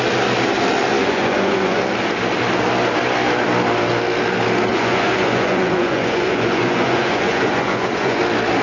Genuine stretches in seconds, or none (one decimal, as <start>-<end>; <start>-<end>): 0.0-1.0; 1.8-4.7; 8.2-8.6